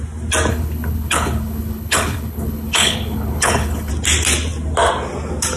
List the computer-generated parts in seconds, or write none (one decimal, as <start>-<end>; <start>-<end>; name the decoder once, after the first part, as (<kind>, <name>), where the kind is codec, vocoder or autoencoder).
0.5-3.9 (codec, HILCodec)